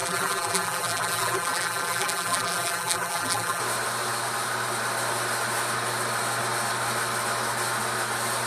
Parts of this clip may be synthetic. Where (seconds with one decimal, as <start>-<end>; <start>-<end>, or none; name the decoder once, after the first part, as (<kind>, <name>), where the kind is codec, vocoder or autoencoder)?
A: 0.0-3.6 (vocoder, BigVGAN v2)